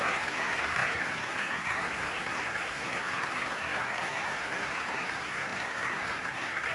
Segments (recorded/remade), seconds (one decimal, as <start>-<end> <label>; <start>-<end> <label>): 0.0-6.7 remade